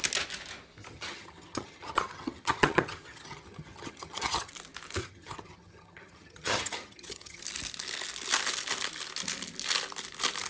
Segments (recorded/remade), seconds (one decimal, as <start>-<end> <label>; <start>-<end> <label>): 0.0-0.9 recorded; 0.9-4.5 remade; 4.5-5.0 recorded; 5.0-7.4 remade; 7.4-10.5 recorded